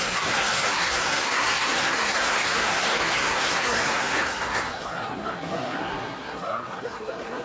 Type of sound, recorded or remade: remade